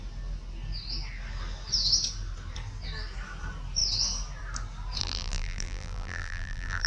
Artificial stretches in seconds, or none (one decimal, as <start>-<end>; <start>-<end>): 5.0-6.9